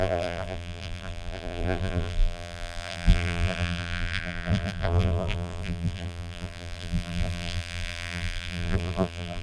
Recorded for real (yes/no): no